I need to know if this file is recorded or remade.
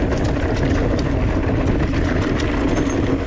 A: recorded